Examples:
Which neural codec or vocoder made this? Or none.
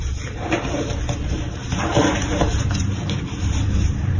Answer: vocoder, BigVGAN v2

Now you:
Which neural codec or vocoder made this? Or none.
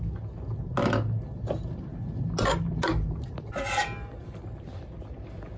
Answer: none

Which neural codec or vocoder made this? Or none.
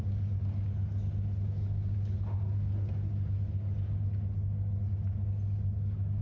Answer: none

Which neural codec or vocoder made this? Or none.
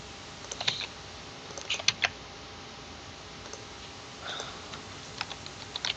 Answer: none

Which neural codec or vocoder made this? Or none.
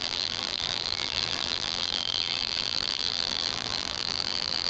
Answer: vocoder, BigVGAN v2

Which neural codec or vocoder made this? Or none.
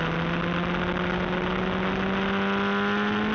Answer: none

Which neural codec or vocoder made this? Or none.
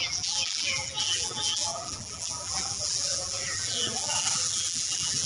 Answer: vocoder, BigVGAN v2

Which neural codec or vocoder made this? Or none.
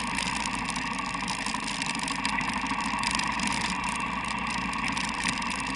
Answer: vocoder, BigVGAN v2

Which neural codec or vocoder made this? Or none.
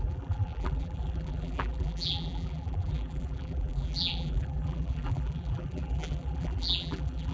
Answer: vocoder, BigVGAN v2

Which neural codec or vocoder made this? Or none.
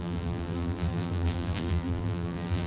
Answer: vocoder, BigVGAN v2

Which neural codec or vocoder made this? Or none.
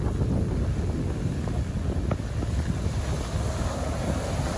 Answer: none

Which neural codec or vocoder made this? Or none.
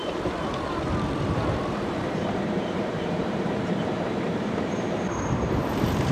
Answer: vocoder, BigVGAN v2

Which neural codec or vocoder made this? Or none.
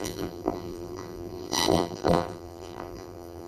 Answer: vocoder, BigVGAN v2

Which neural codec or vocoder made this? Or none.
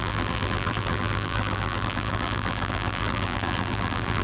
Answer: vocoder, BigVGAN v2